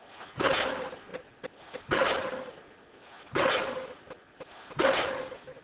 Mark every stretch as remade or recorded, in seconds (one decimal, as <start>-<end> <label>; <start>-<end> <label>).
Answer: 0.0-5.6 recorded